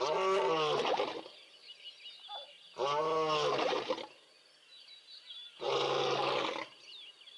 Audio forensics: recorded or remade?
recorded